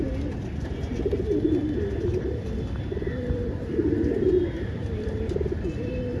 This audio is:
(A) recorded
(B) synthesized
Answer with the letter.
A